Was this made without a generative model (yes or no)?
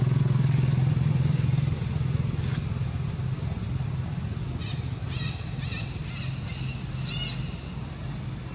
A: yes